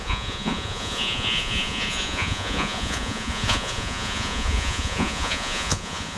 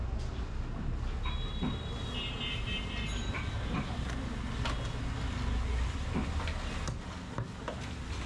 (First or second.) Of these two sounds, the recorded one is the second